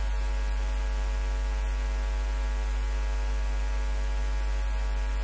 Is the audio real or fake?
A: real